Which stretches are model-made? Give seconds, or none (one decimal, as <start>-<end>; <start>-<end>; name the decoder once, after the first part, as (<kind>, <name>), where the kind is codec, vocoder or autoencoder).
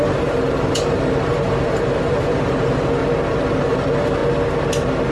0.0-3.0 (vocoder, BigVGAN v2); 3.6-4.2